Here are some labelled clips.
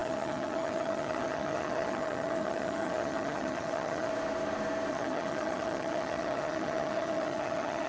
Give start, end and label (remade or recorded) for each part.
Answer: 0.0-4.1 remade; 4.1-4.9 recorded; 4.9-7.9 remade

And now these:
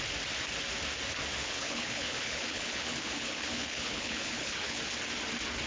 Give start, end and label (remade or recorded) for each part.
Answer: 0.0-1.4 recorded; 1.4-4.8 remade; 4.8-5.7 recorded

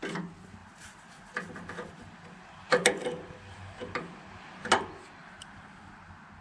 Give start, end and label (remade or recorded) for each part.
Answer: 0.0-0.6 recorded; 0.6-4.1 remade; 4.1-5.2 recorded; 5.2-5.9 remade; 5.9-6.4 recorded